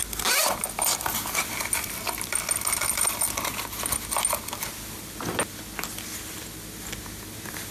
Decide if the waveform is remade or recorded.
recorded